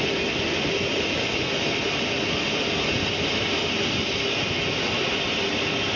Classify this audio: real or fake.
real